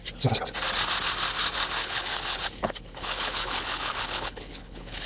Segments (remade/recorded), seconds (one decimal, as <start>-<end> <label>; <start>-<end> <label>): 0.0-1.8 recorded; 1.8-5.1 remade